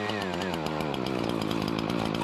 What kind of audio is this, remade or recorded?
recorded